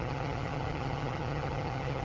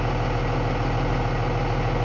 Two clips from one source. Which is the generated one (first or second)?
first